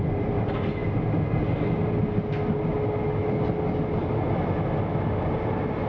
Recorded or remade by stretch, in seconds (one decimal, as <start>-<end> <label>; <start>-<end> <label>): 0.0-5.9 recorded